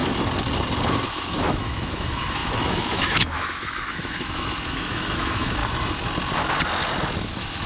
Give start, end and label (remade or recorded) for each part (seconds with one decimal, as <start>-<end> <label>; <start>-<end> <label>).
0.0-1.1 recorded; 1.1-5.6 remade; 5.6-7.3 recorded; 7.3-7.7 remade

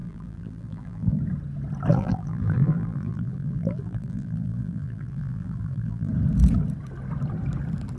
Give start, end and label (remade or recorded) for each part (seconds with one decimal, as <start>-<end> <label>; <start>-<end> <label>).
0.0-1.2 remade; 1.2-1.9 recorded; 1.9-6.1 remade; 6.1-8.0 recorded

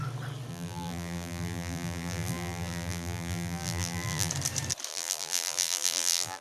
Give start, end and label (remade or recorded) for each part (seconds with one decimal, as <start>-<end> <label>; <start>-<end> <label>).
0.0-0.5 recorded; 0.5-4.3 remade; 4.3-4.9 recorded; 4.9-6.4 remade

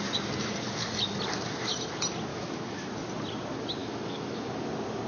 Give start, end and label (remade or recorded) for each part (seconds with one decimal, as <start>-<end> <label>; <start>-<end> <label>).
0.0-2.3 recorded; 2.3-2.9 remade; 2.9-3.8 recorded; 3.8-4.6 remade; 4.6-5.1 recorded

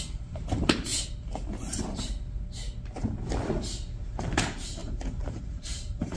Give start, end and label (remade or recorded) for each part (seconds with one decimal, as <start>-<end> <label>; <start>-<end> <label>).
0.0-0.9 remade; 0.9-4.3 recorded; 4.3-6.2 remade